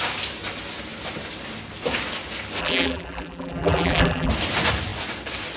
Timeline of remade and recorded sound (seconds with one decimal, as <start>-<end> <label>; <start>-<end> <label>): 0.0-2.6 recorded; 2.6-4.3 remade; 4.3-5.6 recorded